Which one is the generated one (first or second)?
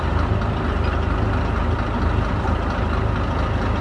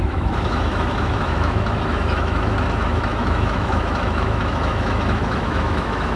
second